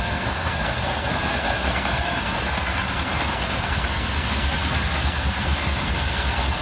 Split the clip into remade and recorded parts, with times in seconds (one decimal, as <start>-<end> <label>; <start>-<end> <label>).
0.0-6.6 remade